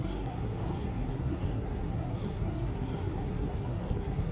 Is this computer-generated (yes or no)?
yes